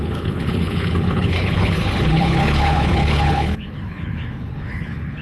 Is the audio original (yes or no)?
no